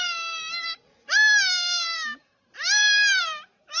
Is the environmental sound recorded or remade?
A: remade